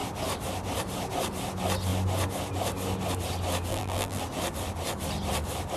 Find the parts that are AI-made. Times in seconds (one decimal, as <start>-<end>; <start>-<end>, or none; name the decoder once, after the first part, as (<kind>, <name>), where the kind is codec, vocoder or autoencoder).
3.7-4.2 (vocoder, BigVGAN v2)